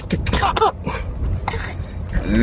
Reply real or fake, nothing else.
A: real